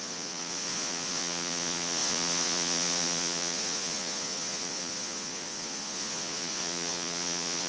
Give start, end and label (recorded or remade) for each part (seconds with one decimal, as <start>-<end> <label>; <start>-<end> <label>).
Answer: 0.0-7.7 remade